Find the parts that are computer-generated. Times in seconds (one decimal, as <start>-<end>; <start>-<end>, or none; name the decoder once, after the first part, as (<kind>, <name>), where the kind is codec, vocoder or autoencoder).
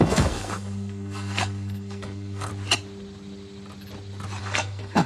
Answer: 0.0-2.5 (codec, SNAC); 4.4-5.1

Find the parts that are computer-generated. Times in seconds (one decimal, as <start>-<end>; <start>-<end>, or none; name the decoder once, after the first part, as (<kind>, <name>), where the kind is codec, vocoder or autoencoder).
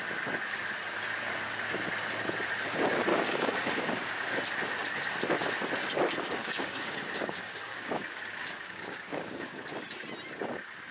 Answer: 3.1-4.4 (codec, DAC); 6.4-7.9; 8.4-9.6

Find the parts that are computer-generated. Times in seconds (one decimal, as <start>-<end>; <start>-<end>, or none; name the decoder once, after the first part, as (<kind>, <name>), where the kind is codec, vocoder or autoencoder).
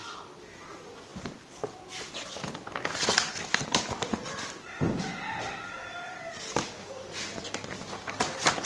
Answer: none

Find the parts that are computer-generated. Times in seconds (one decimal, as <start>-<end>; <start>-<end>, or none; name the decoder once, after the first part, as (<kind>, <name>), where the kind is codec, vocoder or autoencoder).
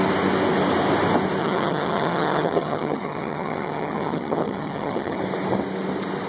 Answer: 1.4-5.2 (vocoder, HiFi-GAN)